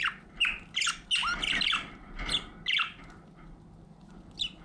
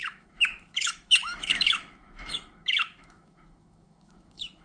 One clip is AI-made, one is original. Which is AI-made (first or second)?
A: second